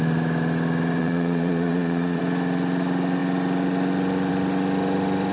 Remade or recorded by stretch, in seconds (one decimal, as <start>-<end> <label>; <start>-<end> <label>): 0.0-1.0 recorded; 1.0-2.2 remade; 2.2-5.3 recorded